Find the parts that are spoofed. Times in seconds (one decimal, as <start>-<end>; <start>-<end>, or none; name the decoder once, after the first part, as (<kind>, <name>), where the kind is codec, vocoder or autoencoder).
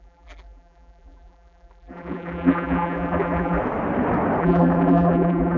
0.0-3.6 (vocoder, BigVGAN v2); 4.4-5.6